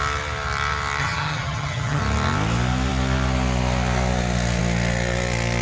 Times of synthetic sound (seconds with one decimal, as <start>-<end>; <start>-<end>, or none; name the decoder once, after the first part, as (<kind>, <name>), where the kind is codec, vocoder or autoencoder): 1.0-2.0 (vocoder, HiFi-GAN)